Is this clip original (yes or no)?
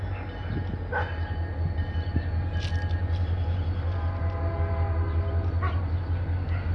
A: yes